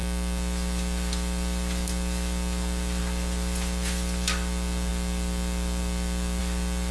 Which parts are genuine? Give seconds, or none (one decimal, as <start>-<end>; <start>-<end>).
0.0-6.9